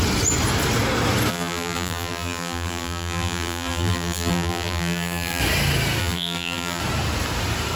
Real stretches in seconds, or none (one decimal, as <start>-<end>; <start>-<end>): 0.0-1.3; 5.4-6.0; 6.8-7.8